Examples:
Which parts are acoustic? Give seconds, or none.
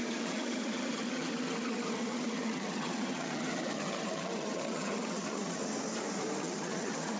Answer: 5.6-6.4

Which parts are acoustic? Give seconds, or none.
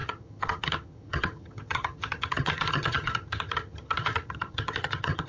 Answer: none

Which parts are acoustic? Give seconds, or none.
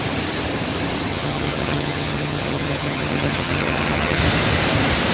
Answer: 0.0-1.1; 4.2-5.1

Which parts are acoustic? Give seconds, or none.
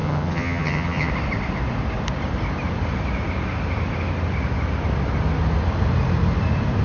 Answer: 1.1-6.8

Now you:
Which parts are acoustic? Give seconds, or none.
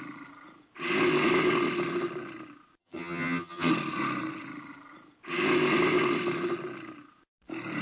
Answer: 0.0-2.8; 3.7-7.8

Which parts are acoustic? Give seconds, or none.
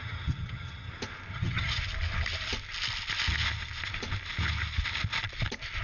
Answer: 0.9-1.3; 1.8-5.8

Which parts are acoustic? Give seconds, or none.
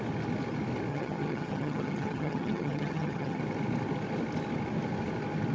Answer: 0.0-0.9; 3.4-5.5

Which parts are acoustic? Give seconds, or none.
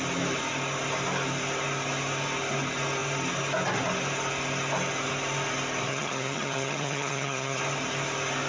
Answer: 0.0-5.9; 7.6-8.5